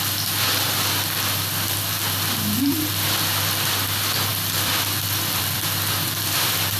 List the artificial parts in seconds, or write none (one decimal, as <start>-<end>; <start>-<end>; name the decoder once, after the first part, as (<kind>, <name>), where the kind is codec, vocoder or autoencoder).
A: 4.3-6.8 (vocoder, BigVGAN v2)